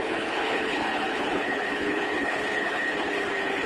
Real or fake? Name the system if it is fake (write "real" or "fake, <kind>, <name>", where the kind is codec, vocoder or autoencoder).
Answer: fake, codec, HILCodec